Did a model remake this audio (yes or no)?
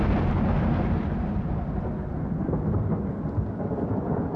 no